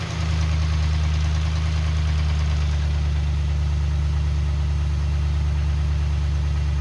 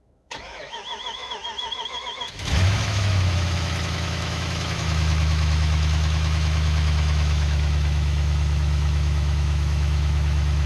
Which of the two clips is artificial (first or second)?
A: second